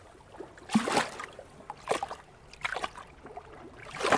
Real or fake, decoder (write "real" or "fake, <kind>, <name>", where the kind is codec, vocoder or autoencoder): real